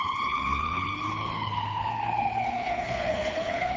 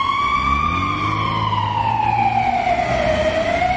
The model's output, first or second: first